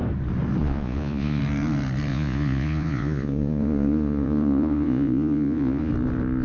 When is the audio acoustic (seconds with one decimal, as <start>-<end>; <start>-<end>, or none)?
0.0-0.6; 1.4-2.1; 5.9-6.4